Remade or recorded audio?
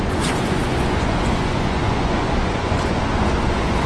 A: remade